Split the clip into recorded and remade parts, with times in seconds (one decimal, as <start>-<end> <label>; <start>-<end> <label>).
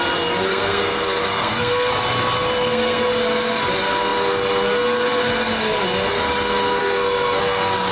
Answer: 0.0-0.5 recorded; 0.5-1.9 remade; 1.9-2.6 recorded; 2.6-3.1 remade; 3.1-6.8 recorded; 6.8-7.4 remade; 7.4-7.9 recorded